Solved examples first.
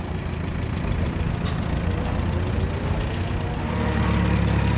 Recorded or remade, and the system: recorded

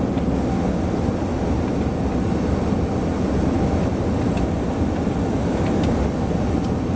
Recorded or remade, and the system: recorded